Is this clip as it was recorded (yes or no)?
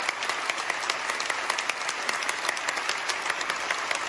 yes